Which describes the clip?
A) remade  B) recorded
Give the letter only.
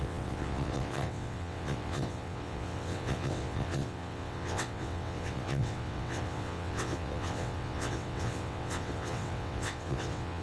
A